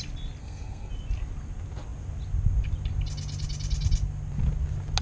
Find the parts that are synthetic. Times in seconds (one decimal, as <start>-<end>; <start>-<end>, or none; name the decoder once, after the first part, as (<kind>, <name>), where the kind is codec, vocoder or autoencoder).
0.4-0.9 (codec, SNAC)